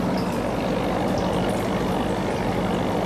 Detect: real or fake fake